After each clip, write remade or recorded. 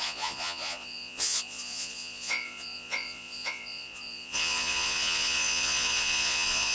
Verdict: remade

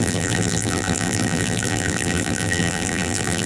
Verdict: remade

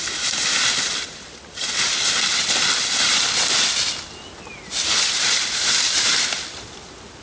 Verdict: recorded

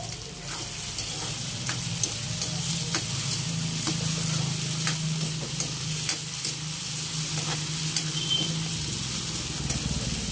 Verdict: recorded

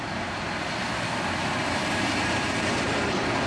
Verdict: remade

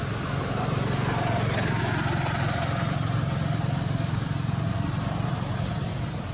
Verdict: recorded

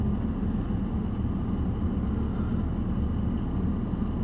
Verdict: recorded